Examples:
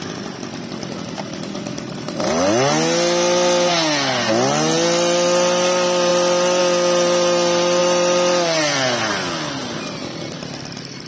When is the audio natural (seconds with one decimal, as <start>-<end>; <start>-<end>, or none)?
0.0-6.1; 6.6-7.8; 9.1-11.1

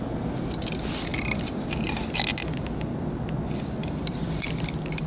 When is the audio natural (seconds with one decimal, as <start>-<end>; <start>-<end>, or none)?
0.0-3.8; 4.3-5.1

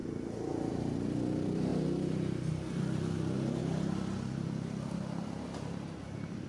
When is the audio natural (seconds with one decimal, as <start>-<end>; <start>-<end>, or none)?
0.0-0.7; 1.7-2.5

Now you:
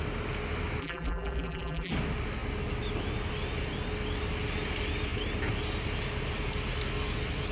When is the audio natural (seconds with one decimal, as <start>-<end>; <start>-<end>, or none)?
0.0-0.8; 1.9-7.5

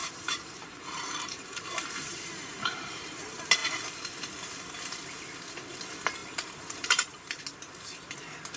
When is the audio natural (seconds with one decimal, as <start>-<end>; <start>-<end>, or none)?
3.2-6.2; 7.4-8.6